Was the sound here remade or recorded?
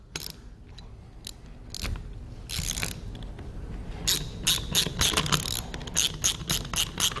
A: recorded